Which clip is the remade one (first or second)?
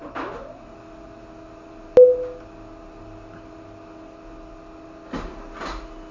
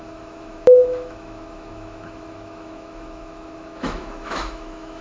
second